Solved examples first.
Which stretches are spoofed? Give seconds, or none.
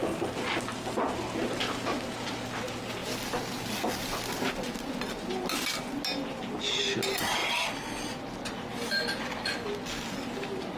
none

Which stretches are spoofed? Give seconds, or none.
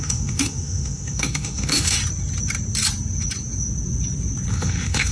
0.0-2.0 (autoencoder, DAC-VAE); 4.5-5.1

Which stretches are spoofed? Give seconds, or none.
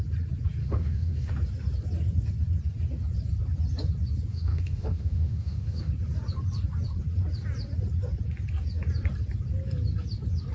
0.6-1.3 (autoencoder, DAC-VAE); 4.3-5.9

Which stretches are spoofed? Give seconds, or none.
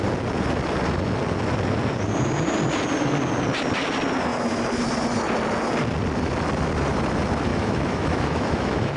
7.5-9.0 (autoencoder, DAC-VAE)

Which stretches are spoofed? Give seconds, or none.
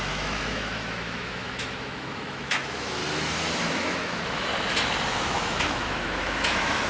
0.0-3.0 (autoencoder, DAC-VAE); 3.7-4.5; 5.1-6.9